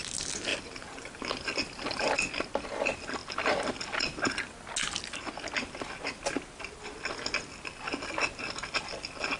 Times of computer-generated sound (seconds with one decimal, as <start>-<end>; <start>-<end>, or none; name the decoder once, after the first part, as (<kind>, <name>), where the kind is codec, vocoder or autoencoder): 0.5-2.3 (vocoder, BigVGAN v2)